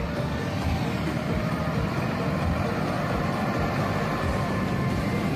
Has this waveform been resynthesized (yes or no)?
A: no